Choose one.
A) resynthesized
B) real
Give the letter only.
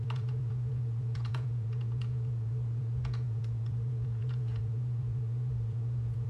A